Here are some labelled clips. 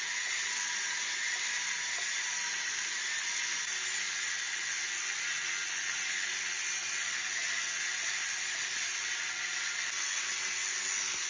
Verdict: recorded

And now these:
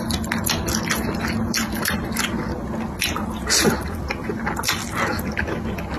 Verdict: recorded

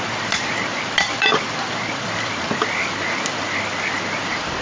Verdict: remade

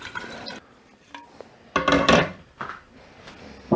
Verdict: recorded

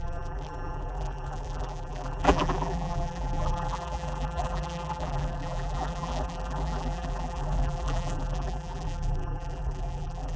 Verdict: remade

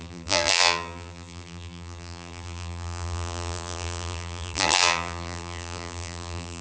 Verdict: remade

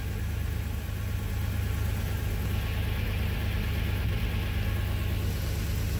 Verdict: recorded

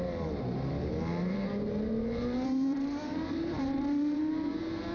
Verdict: remade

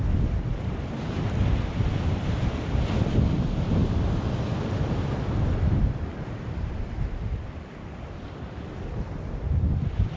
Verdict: recorded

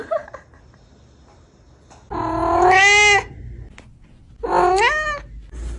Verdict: recorded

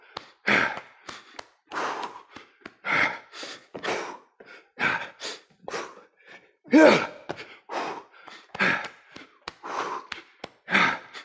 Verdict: recorded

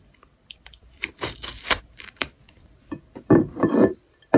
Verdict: remade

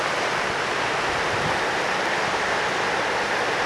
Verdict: recorded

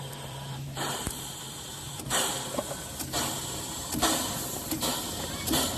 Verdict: remade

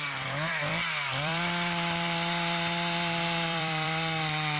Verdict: remade